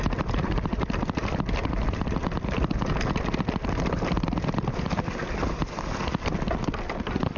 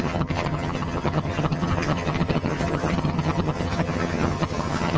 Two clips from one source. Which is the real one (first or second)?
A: first